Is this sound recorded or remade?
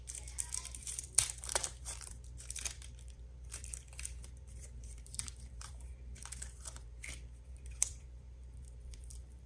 remade